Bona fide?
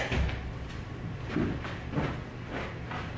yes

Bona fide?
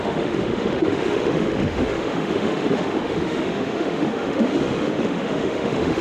no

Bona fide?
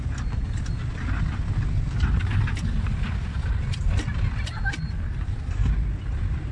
yes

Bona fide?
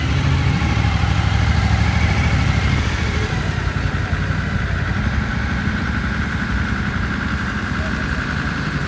no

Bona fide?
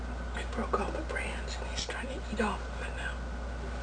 yes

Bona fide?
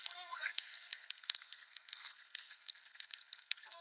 no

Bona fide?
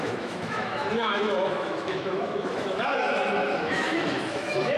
no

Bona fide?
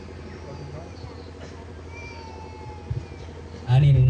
yes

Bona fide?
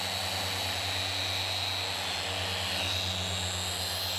yes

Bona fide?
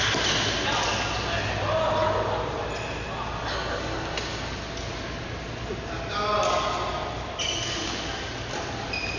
yes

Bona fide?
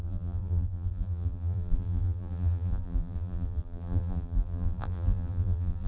no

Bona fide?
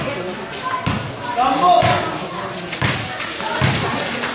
yes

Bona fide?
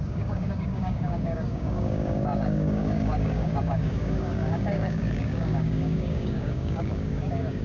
no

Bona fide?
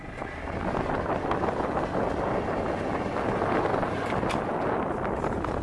yes